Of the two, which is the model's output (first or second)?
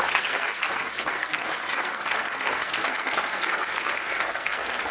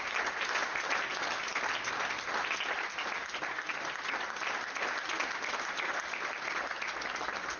first